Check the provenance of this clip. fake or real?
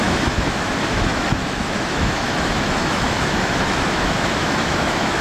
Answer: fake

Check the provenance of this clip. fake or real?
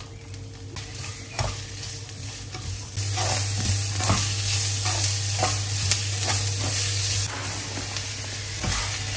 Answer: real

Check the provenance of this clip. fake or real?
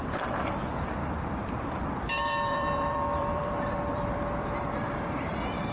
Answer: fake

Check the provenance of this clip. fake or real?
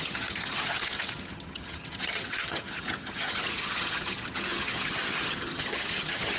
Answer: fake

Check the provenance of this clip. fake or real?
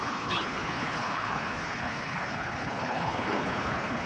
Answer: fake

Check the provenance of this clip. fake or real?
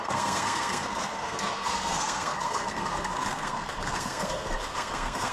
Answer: fake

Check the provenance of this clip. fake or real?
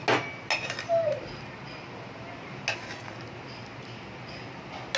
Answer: real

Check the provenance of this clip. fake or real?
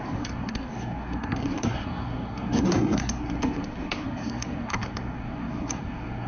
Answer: fake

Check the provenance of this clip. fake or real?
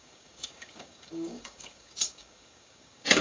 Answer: fake